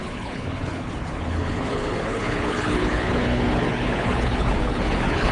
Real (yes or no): no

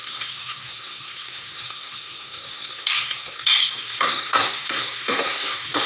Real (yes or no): no